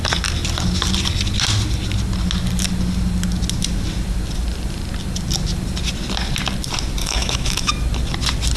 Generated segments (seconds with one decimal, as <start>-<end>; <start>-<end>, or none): 7.0-7.7

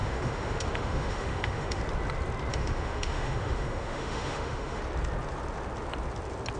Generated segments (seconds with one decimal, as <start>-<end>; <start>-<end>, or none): 0.0-1.8; 2.5-4.8